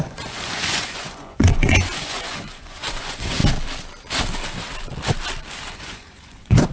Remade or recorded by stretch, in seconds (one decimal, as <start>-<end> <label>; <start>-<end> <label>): 0.0-3.4 remade; 3.4-5.7 recorded; 5.7-6.7 remade